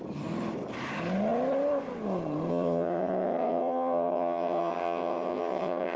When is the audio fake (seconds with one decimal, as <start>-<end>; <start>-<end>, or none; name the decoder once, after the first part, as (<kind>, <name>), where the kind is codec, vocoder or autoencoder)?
2.5-6.0 (vocoder, HiFi-GAN)